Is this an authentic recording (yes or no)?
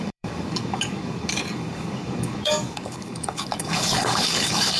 no